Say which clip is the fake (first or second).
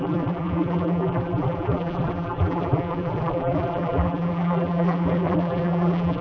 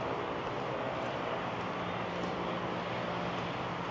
first